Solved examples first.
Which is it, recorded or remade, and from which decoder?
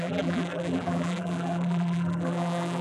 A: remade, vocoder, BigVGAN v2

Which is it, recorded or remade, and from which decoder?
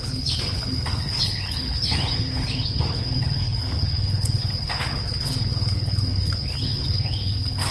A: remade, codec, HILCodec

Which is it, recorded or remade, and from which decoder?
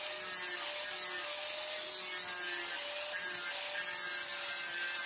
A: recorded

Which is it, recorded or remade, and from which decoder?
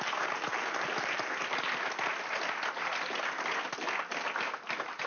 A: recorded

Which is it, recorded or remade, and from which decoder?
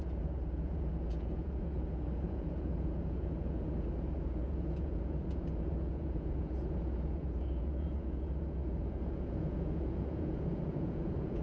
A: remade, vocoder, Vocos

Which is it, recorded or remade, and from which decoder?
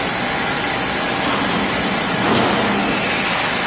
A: recorded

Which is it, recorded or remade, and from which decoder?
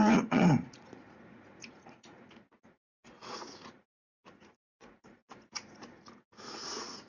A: remade, vocoder, Vocos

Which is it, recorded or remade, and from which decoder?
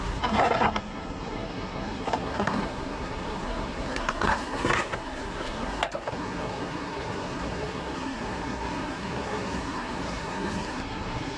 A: remade, codec, SNAC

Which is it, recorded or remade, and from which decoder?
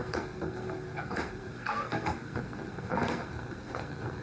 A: remade, codec, SNAC